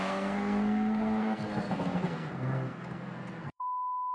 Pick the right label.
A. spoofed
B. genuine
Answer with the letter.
A